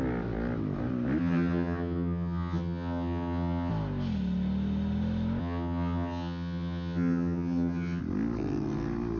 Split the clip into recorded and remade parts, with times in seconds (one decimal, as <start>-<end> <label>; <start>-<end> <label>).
0.0-1.2 recorded; 1.2-3.7 remade; 3.7-5.4 recorded; 5.4-8.0 remade; 8.0-9.2 recorded